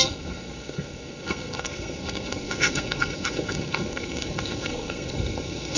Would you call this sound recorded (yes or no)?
no